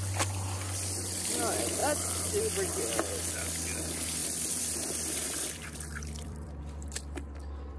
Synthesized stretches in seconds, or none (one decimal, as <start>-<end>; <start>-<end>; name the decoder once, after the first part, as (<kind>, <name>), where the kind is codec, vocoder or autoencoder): 4.2-6.6 (vocoder, BigVGAN v2)